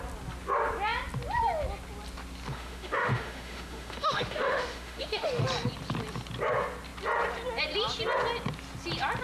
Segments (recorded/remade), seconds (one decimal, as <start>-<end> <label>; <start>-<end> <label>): 0.0-2.5 recorded; 2.5-5.4 remade; 5.4-9.2 recorded